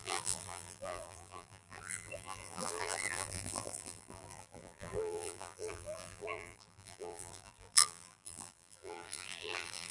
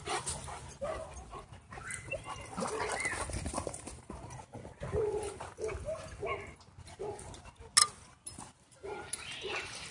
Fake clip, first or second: first